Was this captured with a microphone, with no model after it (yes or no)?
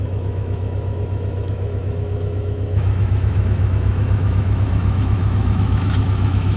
no